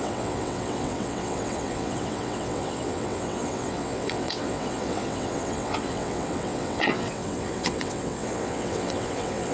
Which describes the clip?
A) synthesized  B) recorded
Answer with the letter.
A